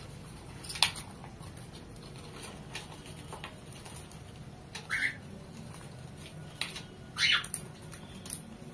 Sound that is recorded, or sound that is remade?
recorded